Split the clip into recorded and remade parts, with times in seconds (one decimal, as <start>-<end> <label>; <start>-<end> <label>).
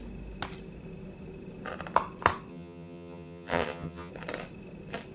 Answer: 0.0-2.5 recorded; 2.5-4.1 remade; 4.1-5.1 recorded